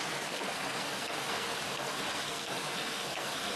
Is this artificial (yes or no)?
yes